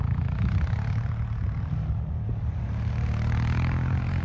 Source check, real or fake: fake